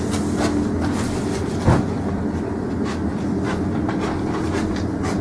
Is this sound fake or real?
real